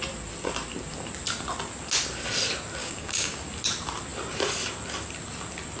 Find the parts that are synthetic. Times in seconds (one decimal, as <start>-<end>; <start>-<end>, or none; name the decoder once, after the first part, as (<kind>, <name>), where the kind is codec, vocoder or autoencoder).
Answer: 2.8-3.3 (codec, DAC)